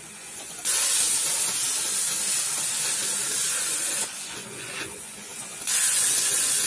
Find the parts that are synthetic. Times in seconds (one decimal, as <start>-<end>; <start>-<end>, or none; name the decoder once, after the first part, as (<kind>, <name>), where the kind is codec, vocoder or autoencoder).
0.0-0.9 (vocoder, Vocos); 3.6-6.7